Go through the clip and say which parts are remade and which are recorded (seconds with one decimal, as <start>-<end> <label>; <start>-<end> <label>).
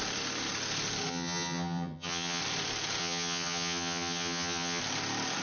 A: 0.0-1.1 recorded; 1.1-2.4 remade; 2.4-3.0 recorded; 3.0-4.8 remade; 4.8-5.4 recorded